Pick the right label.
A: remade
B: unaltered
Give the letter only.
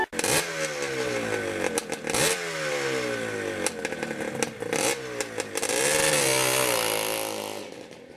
B